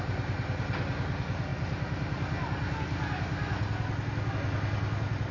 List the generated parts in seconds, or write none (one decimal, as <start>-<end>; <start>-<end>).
none